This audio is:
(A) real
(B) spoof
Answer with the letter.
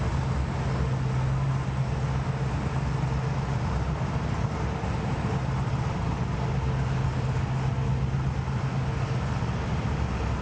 A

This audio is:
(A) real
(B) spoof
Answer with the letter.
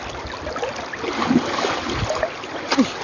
A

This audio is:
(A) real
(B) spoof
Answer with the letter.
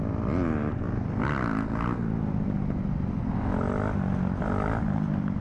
A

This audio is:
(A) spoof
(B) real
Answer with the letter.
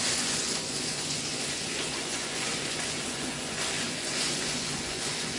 A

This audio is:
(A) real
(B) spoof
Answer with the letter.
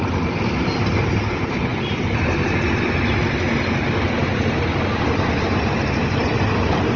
A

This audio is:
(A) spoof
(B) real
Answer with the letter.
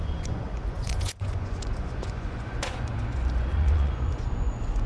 A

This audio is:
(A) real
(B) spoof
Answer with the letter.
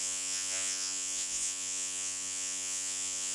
B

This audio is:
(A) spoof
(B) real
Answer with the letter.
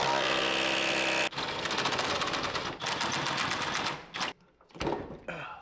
B